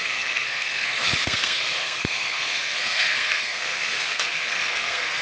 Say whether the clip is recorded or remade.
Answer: remade